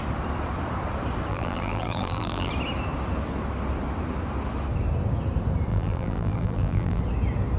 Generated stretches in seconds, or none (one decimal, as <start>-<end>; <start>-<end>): 1.3-2.5; 5.7-7.0